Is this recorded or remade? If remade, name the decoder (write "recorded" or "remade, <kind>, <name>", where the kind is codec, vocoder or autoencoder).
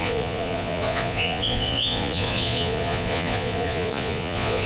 remade, vocoder, Vocos